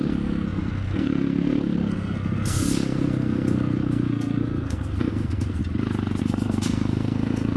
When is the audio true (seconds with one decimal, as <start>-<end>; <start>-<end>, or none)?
5.6-6.2